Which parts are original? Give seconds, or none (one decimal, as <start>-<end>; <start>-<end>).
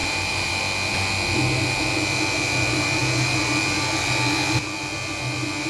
0.6-5.7